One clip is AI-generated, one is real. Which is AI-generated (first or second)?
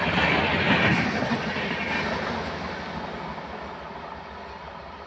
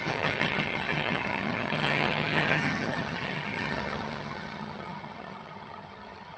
second